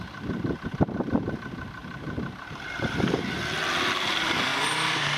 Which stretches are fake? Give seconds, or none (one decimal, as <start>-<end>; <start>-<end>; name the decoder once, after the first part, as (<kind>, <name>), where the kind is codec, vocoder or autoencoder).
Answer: 1.8-3.4 (vocoder, BigVGAN v2); 4.5-5.2